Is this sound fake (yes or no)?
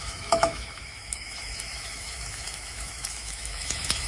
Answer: yes